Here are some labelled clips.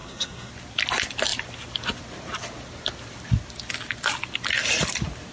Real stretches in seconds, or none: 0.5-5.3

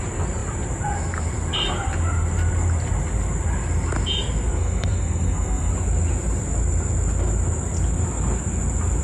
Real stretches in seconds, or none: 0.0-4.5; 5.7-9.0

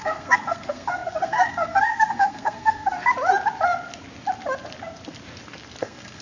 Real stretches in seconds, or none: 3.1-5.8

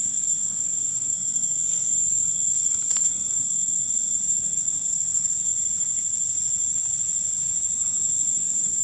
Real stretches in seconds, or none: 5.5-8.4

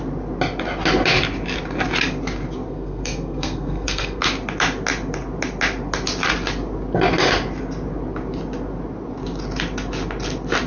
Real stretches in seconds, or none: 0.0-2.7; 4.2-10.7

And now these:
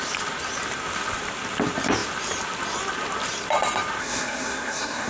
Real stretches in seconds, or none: 0.0-4.0